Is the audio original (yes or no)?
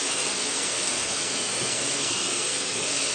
no